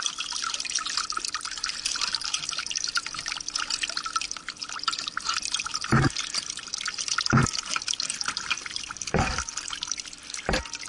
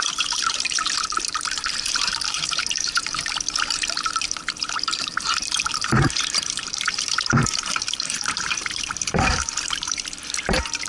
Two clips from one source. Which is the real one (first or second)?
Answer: first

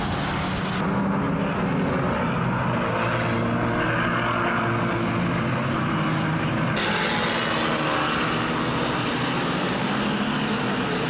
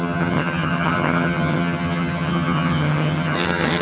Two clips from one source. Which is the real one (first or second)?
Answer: first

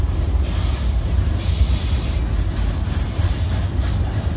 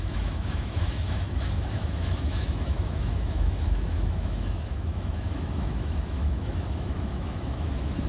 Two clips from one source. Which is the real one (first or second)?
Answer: first